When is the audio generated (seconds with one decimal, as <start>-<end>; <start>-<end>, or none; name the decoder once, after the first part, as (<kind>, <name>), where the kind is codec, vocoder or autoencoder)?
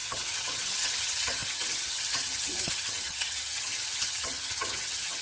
0.0-5.2 (vocoder, HiFi-GAN)